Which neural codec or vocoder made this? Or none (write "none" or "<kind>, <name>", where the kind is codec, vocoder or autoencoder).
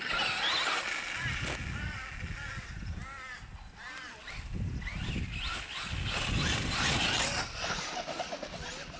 none